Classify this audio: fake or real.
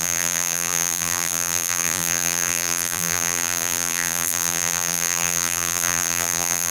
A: fake